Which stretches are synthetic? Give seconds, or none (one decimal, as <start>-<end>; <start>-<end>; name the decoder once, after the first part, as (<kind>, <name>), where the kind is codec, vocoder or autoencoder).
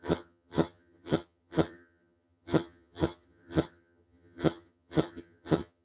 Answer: 0.0-5.8 (vocoder, HiFi-GAN)